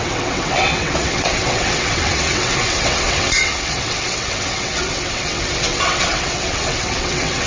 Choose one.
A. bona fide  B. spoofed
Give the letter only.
B